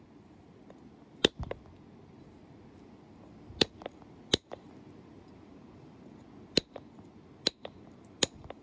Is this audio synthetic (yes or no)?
no